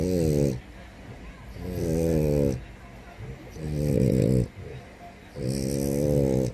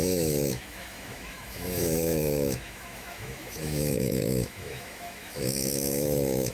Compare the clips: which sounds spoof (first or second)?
second